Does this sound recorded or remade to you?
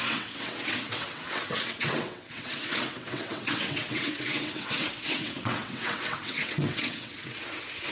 remade